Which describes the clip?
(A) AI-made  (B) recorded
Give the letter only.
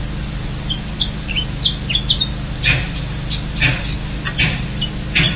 B